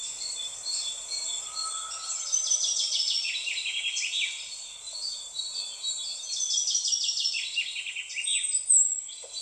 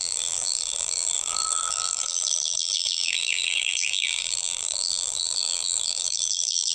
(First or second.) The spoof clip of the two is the second